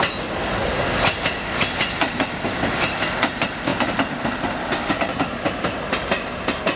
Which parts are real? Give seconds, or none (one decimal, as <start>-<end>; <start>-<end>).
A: 0.0-6.8